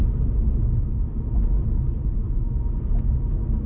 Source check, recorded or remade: recorded